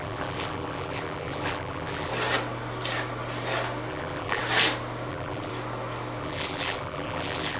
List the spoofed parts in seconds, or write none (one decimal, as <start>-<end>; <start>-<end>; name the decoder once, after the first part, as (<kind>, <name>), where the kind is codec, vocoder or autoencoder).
0.0-2.1 (vocoder, BigVGAN v2); 3.9-4.4; 5.1-5.5; 6.2-7.6